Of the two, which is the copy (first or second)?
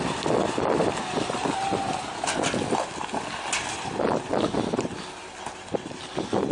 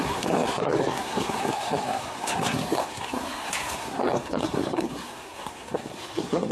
second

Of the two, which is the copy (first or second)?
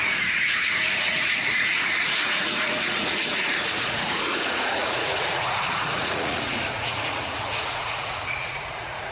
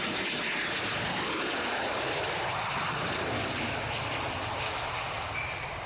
first